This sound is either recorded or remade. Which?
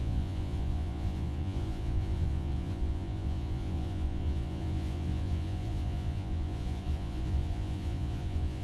remade